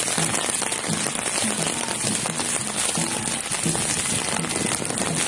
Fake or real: real